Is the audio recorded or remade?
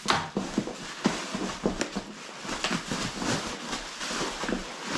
recorded